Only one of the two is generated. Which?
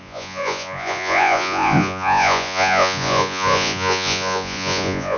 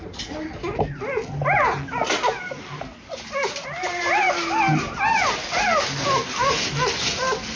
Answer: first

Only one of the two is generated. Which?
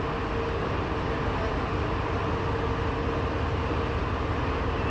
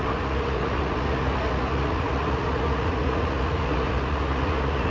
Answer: second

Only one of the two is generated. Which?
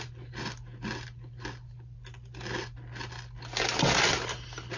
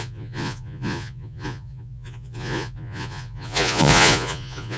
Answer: second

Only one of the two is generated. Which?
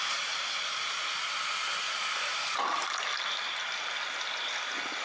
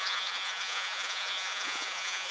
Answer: second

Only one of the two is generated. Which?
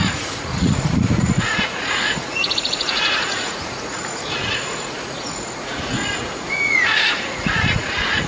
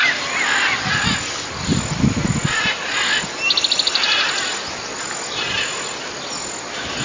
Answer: first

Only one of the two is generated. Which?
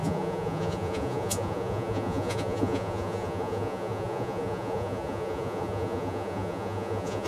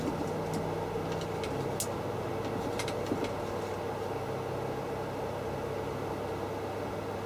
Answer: first